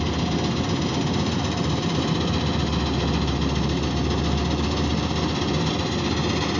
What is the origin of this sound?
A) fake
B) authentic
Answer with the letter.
B